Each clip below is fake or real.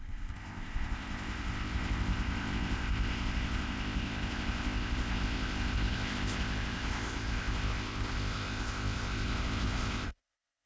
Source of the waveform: fake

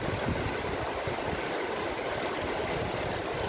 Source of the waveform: real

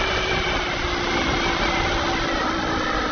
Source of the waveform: real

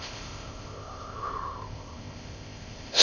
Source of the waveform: fake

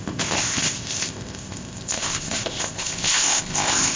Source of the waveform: fake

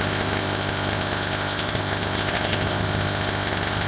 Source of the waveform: fake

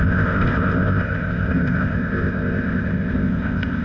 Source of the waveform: fake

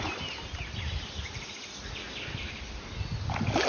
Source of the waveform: real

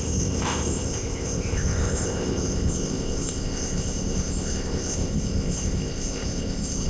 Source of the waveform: fake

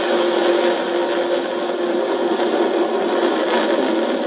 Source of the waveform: real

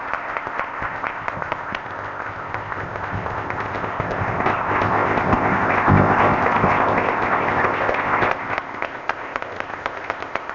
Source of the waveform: fake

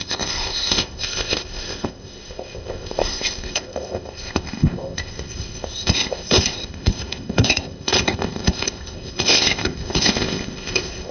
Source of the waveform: fake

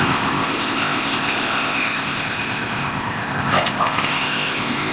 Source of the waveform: fake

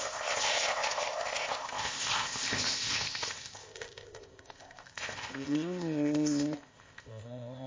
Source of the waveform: fake